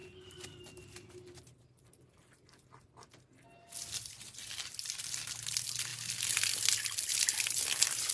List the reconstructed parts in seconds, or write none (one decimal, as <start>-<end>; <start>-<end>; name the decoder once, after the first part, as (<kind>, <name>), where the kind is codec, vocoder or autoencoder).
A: none